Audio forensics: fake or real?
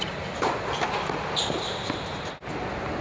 real